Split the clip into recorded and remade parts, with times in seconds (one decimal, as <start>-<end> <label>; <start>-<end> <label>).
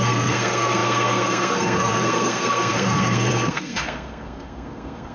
0.0-5.1 remade